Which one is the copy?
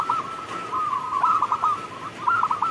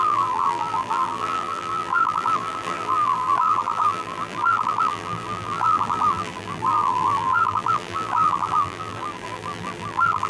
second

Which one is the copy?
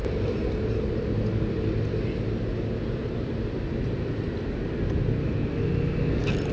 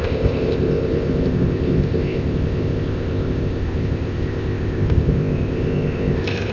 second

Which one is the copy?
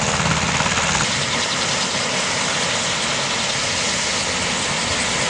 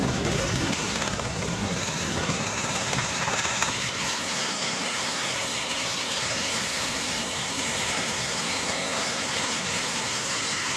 second